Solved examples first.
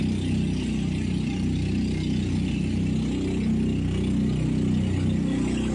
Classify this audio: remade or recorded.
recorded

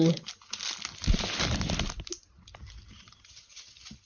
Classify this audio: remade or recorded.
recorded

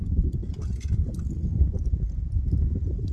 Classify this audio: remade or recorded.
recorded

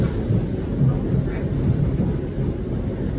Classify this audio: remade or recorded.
recorded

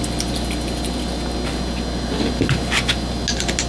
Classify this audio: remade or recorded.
recorded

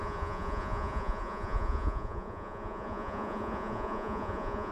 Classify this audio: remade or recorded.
remade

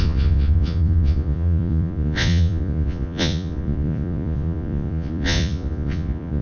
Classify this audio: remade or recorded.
remade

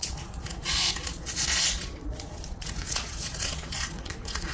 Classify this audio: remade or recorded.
remade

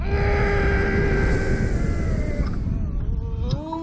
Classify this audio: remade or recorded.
recorded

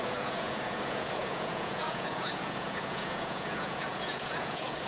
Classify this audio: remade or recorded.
remade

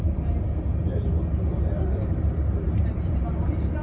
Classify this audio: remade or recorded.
recorded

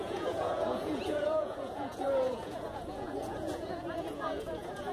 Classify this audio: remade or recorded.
remade